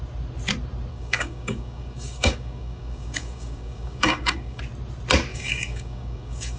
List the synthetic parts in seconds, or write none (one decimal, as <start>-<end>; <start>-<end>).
0.9-4.6; 5.3-6.6